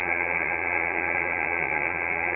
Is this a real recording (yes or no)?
no